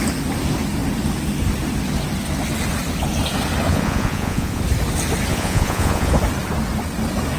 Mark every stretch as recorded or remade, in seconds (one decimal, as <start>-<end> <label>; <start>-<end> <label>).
0.0-3.7 recorded; 3.7-4.6 remade; 4.6-5.3 recorded; 5.3-6.1 remade; 6.1-7.4 recorded